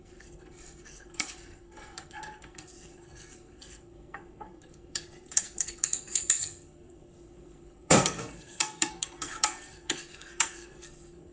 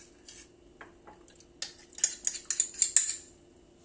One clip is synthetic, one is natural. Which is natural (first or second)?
second